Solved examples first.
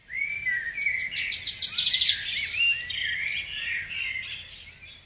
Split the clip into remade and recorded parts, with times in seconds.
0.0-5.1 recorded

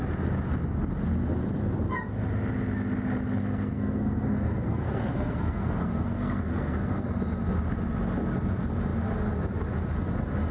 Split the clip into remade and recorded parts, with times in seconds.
0.0-3.4 recorded; 3.4-7.2 remade; 7.2-10.5 recorded

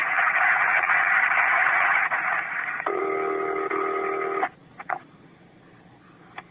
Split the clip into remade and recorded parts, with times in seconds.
0.0-3.0 remade; 3.0-4.6 recorded; 4.6-5.3 remade; 5.3-6.5 recorded

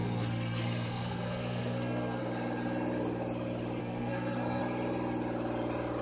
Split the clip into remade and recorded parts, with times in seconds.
0.0-2.2 remade; 2.2-3.8 recorded; 3.8-4.6 remade; 4.6-6.0 recorded

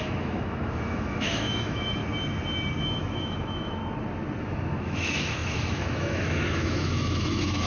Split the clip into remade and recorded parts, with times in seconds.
0.0-2.0 remade; 2.0-2.8 recorded; 2.8-3.8 remade; 3.8-4.4 recorded; 4.4-7.7 remade